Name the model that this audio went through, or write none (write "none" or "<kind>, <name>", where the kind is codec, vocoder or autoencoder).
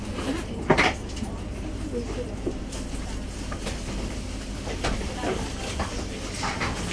none